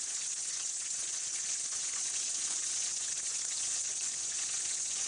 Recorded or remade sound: remade